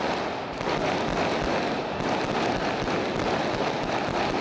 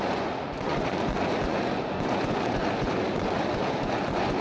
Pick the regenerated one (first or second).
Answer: second